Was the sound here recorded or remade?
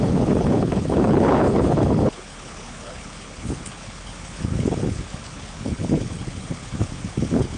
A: remade